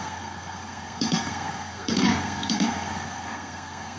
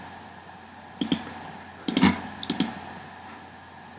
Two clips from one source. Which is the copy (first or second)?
first